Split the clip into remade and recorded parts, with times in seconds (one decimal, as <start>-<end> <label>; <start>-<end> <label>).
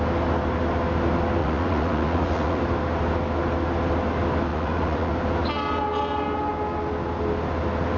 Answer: 0.0-1.4 recorded; 1.4-2.6 remade; 2.6-4.5 recorded; 4.5-5.1 remade; 5.1-8.0 recorded